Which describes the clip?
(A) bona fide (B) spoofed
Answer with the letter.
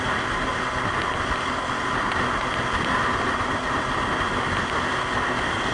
A